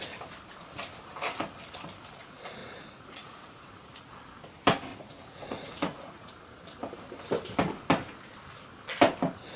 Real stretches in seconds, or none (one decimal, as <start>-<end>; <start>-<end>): 0.0-2.6; 4.0-4.9; 6.3-9.6